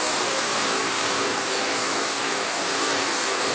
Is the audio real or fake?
fake